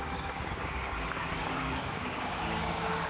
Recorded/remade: remade